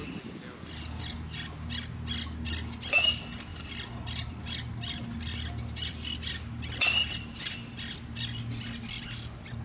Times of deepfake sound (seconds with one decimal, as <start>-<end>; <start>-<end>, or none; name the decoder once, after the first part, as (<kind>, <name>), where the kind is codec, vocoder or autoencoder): none